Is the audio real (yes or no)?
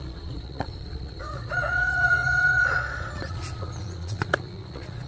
no